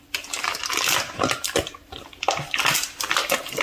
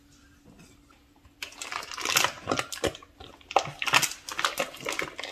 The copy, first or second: first